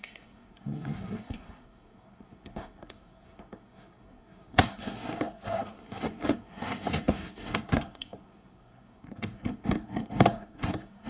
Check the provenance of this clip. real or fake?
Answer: fake